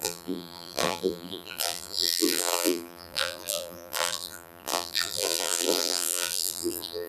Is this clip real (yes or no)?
no